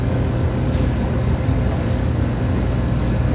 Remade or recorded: remade